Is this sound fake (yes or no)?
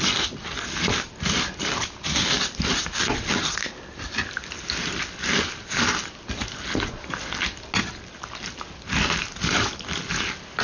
no